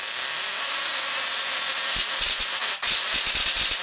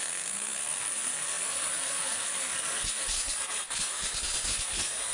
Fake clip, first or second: second